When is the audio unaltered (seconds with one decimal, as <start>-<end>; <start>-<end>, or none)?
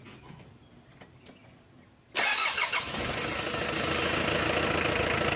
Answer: 0.0-5.4